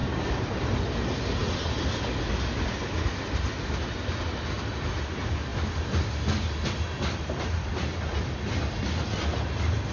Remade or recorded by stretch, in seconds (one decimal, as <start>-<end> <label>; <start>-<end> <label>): 0.0-0.8 remade; 0.8-9.9 recorded